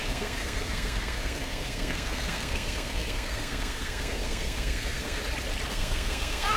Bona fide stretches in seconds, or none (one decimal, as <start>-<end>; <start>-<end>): 5.2-5.7